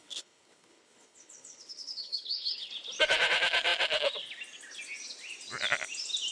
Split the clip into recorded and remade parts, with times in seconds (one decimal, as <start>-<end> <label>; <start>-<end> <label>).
0.0-2.7 remade; 2.7-6.3 recorded